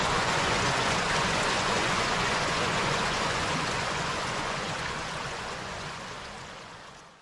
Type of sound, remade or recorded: remade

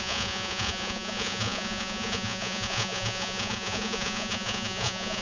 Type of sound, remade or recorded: remade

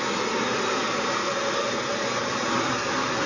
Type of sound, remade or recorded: recorded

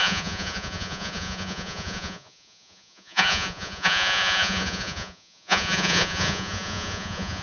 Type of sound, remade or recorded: remade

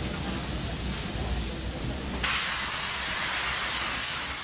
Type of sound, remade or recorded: recorded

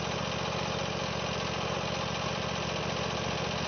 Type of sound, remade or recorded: recorded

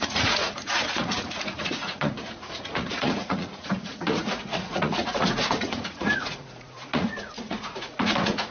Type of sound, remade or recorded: remade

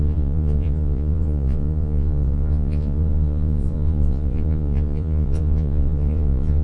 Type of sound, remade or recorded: remade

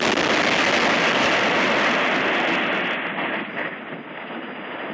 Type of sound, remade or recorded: recorded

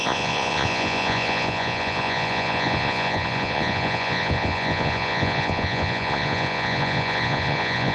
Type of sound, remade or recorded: remade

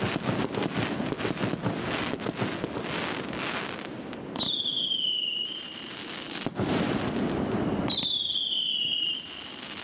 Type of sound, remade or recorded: recorded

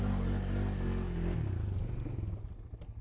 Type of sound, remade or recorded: recorded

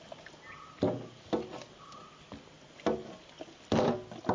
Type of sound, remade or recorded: recorded